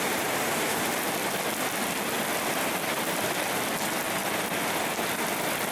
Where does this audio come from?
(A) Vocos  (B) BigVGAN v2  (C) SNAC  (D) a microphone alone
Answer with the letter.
D